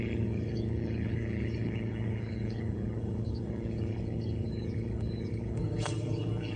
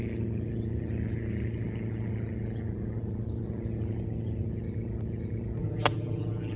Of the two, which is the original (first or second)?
second